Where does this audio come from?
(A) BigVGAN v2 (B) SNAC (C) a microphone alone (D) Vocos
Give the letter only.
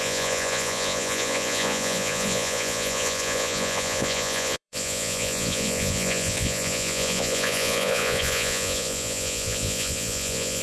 D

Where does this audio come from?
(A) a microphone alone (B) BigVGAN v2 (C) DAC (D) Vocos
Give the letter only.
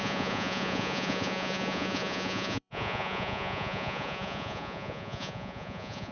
D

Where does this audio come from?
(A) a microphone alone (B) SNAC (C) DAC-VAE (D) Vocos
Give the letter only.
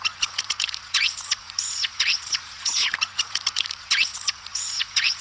D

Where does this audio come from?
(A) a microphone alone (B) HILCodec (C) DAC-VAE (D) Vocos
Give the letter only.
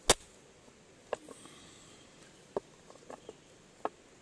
A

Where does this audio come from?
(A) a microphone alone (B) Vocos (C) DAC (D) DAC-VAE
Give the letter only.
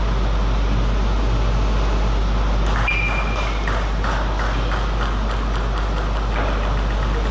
A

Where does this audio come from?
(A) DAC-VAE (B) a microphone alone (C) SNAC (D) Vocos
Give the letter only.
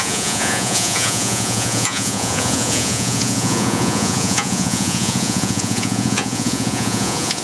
D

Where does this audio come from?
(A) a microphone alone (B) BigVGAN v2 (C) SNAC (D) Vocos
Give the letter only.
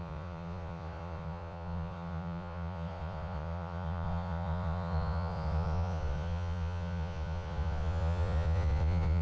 D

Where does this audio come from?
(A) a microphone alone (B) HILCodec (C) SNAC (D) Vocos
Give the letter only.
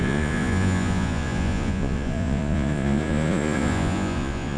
D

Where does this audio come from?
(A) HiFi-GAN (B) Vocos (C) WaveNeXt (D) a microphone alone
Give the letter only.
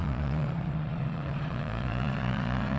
B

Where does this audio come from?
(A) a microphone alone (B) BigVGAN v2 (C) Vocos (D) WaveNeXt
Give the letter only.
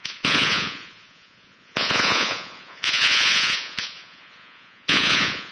C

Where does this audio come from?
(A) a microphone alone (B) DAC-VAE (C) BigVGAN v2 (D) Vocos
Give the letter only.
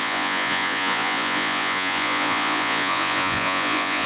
D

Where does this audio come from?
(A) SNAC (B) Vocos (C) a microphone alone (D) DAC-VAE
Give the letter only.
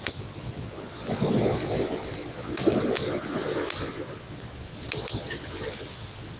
B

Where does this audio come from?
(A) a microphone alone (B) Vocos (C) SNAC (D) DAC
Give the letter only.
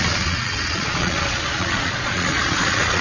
B